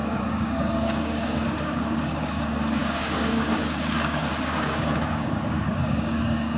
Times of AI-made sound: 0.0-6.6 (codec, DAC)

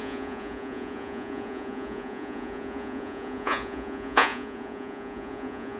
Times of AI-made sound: 0.0-5.8 (vocoder, Vocos)

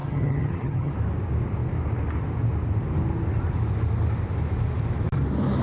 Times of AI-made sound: 0.0-0.9 (vocoder, HiFi-GAN)

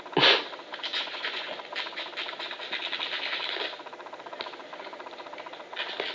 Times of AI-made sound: 0.9-1.5 (vocoder, Vocos)

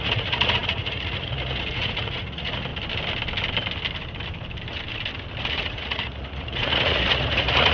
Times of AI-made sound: 0.0-2.7 (vocoder, Vocos); 5.5-7.7

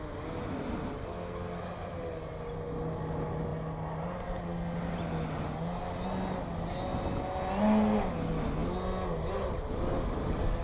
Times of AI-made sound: 1.0-1.6 (codec, SNAC)